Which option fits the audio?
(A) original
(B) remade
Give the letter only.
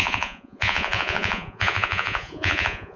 B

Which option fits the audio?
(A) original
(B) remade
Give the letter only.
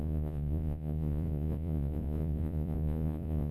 B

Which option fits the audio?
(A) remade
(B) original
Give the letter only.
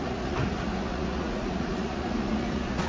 A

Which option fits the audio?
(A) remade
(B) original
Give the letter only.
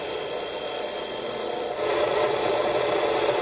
A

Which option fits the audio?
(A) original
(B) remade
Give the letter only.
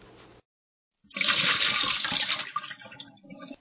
A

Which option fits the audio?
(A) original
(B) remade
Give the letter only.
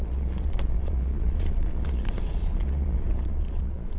B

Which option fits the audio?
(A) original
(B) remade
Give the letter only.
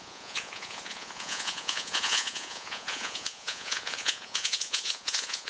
B